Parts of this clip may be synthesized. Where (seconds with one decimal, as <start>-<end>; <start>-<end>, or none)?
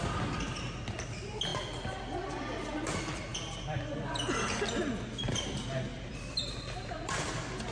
5.9-7.3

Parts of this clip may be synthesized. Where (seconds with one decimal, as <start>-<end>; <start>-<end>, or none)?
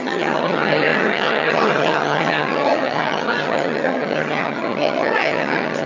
0.0-5.9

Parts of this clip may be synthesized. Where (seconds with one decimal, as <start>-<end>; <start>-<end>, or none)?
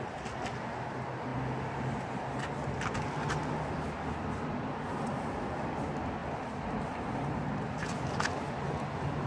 none